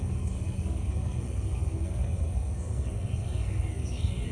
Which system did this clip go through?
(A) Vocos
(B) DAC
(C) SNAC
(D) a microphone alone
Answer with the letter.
C